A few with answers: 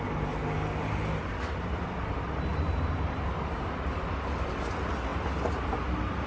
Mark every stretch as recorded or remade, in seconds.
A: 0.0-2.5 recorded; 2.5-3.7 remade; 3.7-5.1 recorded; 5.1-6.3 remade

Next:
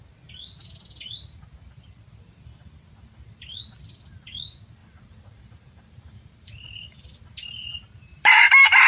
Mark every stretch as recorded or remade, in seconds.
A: 0.0-4.8 recorded; 4.8-8.9 remade

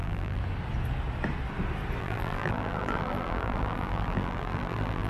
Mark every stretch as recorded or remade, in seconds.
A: 0.0-0.4 remade; 0.4-2.0 recorded; 2.0-5.1 remade

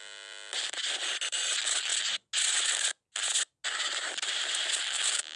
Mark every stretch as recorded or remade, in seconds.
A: 0.0-5.4 recorded

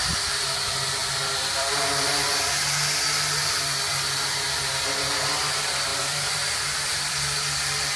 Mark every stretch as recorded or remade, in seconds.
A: 0.0-1.0 recorded; 1.0-2.1 remade; 2.1-5.9 recorded; 5.9-8.0 remade

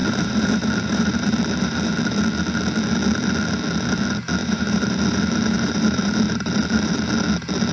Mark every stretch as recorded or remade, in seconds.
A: 0.0-1.9 remade; 1.9-4.4 recorded; 4.4-7.0 remade; 7.0-7.7 recorded

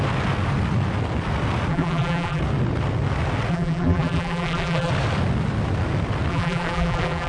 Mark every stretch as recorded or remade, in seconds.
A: 0.0-1.7 recorded; 1.7-2.4 remade; 2.4-3.5 recorded; 3.5-4.9 remade; 4.9-6.3 recorded; 6.3-7.3 remade

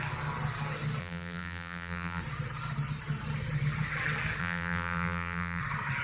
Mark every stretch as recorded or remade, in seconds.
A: 0.0-1.0 recorded; 1.0-2.2 remade; 2.2-4.4 recorded; 4.4-5.6 remade; 5.6-6.0 recorded